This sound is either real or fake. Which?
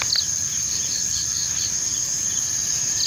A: fake